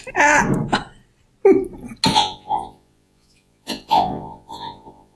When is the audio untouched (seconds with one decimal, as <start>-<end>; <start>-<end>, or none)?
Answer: 0.0-2.1